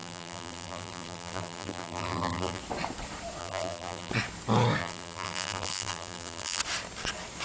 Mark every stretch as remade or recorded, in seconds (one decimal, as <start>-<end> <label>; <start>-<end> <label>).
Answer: 0.0-2.6 remade; 2.6-3.4 recorded; 3.4-4.1 remade; 4.1-4.8 recorded; 4.8-6.6 remade; 6.6-7.4 recorded